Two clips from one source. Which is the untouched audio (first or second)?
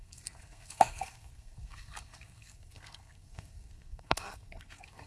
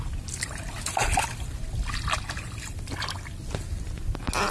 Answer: second